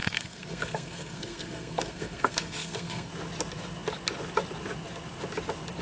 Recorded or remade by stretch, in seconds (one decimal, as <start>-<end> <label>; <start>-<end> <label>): 0.0-3.1 remade; 3.1-5.8 recorded